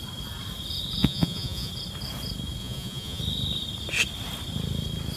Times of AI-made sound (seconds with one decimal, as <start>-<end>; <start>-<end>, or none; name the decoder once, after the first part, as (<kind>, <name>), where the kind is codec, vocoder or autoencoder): 1.0-1.7 (vocoder, Vocos); 2.6-3.2